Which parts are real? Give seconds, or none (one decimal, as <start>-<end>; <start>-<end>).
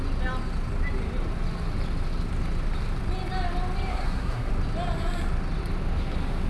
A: 0.0-3.9; 4.5-6.5